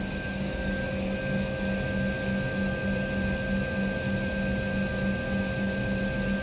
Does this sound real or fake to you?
real